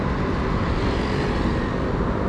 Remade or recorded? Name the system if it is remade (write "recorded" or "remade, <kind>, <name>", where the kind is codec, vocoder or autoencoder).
recorded